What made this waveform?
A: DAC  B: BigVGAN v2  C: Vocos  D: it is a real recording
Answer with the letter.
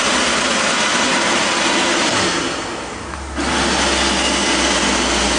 D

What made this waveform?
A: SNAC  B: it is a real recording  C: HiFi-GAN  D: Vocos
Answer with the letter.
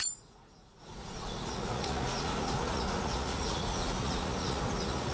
D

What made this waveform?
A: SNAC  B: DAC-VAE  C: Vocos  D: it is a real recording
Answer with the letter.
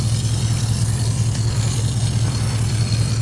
D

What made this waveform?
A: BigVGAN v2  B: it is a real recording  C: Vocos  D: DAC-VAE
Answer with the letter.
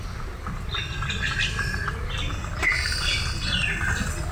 B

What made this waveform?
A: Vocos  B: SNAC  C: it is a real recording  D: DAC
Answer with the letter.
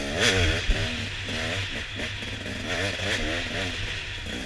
C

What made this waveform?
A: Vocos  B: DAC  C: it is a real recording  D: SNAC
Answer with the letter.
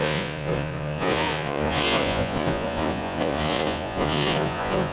A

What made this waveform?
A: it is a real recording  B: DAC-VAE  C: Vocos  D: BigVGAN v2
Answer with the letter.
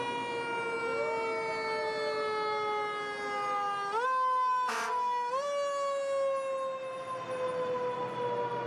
A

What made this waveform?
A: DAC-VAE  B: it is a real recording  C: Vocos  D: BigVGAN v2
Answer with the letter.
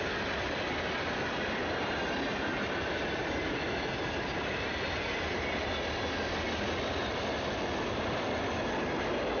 B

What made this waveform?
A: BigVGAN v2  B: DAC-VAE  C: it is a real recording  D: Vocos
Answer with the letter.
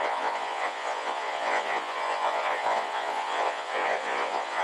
D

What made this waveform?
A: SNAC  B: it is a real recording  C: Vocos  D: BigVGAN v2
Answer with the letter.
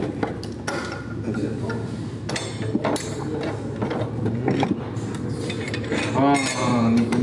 B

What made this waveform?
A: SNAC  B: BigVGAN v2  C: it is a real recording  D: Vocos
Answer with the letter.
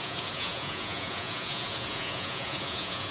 D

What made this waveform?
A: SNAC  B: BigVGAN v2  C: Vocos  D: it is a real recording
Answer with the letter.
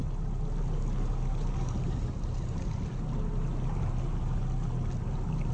D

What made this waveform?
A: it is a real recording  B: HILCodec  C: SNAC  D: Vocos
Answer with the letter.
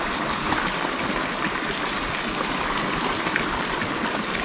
A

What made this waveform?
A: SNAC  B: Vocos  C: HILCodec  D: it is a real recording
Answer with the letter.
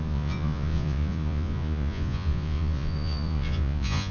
B